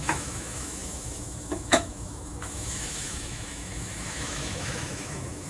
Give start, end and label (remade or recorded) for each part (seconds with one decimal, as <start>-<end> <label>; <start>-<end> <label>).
0.0-5.5 remade